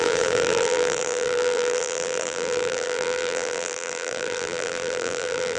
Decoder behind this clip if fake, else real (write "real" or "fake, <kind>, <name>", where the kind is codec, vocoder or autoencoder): fake, vocoder, BigVGAN v2